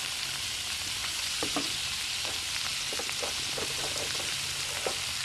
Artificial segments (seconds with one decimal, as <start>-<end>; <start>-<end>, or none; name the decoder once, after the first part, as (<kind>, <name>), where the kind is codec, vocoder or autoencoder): 1.0-1.8 (vocoder, Vocos)